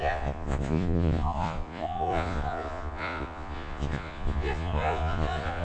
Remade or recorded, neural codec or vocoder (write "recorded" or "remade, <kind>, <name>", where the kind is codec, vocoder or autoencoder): remade, vocoder, Vocos